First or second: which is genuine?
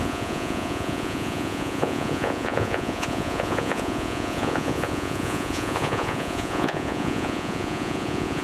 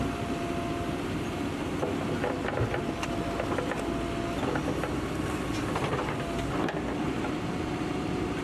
second